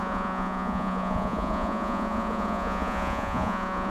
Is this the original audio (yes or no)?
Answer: no